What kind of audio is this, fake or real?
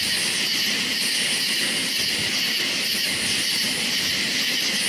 real